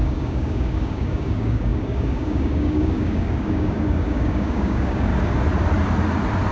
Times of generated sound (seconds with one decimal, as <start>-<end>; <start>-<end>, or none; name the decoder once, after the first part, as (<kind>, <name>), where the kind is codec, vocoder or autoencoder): 0.0-5.1 (codec, DAC)